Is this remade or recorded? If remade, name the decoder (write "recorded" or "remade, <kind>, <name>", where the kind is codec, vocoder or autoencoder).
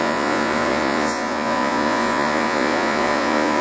remade, vocoder, Vocos